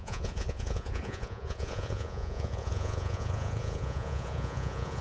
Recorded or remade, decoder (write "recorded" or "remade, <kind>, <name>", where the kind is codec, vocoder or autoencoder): remade, vocoder, Vocos